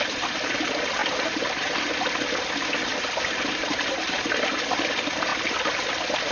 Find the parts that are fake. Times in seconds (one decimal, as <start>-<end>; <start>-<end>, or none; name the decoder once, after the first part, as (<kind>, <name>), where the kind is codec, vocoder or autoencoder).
1.0-1.9 (vocoder, BigVGAN v2); 2.9-4.5